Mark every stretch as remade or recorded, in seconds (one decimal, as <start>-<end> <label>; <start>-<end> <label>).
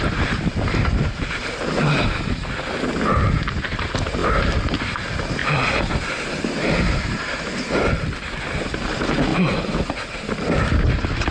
0.0-11.3 recorded